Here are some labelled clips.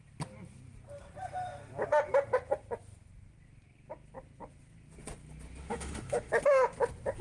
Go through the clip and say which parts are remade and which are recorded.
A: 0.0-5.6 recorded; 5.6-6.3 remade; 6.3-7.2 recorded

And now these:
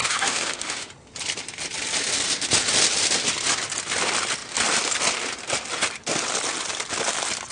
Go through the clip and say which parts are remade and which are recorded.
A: 0.0-0.9 remade; 0.9-7.5 recorded

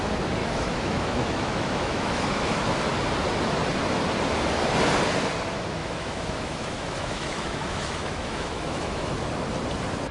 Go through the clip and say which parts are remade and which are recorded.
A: 0.0-0.4 recorded; 0.4-2.8 remade; 2.8-5.8 recorded; 5.8-9.1 remade; 9.1-10.1 recorded

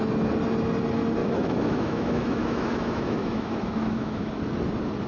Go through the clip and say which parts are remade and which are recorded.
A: 0.0-1.2 recorded; 1.2-4.3 remade; 4.3-5.1 recorded